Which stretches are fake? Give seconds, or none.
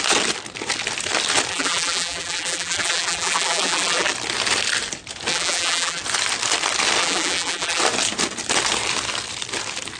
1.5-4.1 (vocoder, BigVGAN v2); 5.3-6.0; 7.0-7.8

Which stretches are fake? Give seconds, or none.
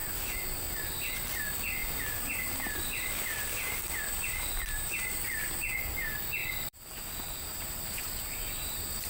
0.0-0.6 (vocoder, BigVGAN v2); 1.8-4.0; 6.4-8.6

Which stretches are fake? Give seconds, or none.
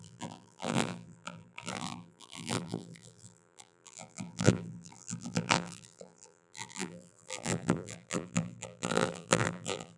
0.0-10.0 (vocoder, BigVGAN v2)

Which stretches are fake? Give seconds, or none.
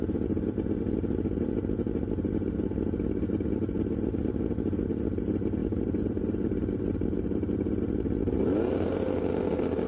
5.6-6.8 (vocoder, BigVGAN v2)